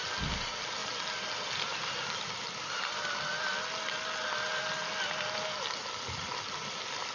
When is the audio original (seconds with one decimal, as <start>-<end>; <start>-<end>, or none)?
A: 0.0-7.1